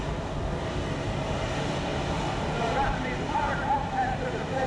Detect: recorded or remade recorded